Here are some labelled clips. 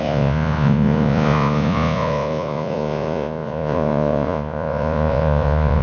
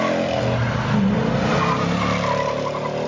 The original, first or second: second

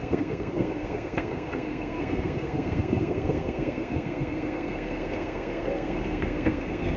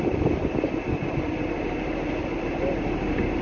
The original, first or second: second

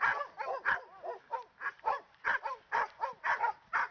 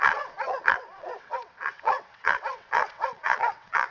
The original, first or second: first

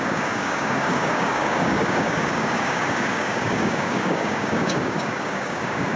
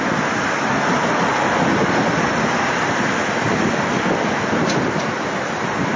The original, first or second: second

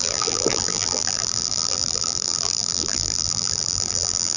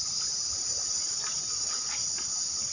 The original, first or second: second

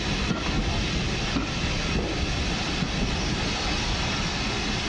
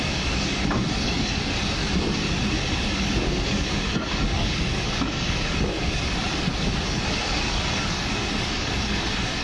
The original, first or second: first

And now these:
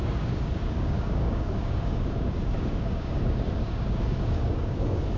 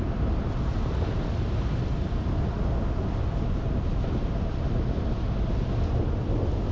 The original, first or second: second